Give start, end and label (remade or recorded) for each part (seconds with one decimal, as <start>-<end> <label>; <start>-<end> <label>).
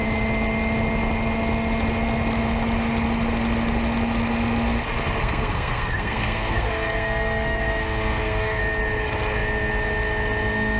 0.0-5.2 recorded; 5.2-8.6 remade; 8.6-10.8 recorded